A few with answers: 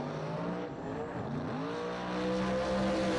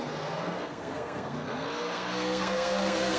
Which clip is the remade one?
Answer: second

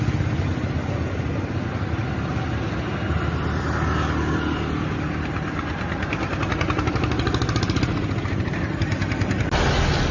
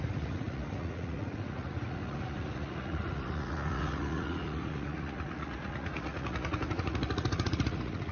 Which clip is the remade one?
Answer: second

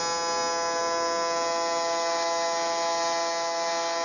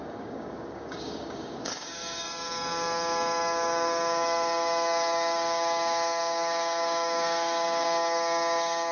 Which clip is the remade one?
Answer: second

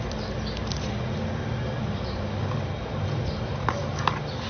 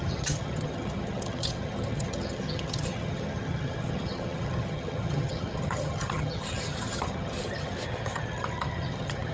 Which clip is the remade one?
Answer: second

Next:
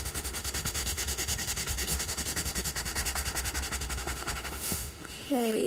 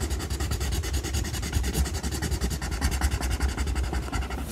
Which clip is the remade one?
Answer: first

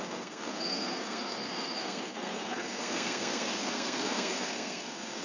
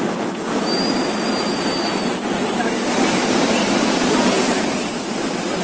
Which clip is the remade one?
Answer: first